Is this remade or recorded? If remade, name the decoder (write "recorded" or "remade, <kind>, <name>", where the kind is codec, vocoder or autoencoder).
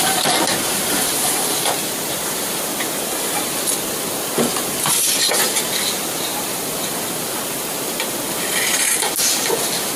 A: recorded